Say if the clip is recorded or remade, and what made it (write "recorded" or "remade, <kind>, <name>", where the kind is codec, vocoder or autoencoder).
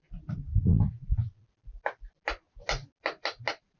recorded